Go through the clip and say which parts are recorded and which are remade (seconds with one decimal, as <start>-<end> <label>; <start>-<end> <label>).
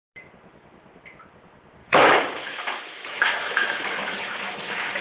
0.0-1.8 recorded; 1.8-5.0 remade